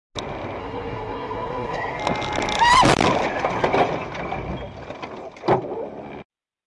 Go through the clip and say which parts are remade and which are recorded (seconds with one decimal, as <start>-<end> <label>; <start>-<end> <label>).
0.0-0.6 recorded; 0.6-2.0 remade; 2.0-6.7 recorded